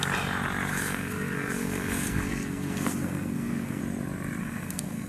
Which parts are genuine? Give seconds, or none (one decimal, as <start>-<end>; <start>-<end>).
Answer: 0.0-0.7; 3.8-4.4